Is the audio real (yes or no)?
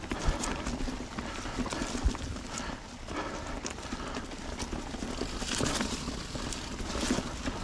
yes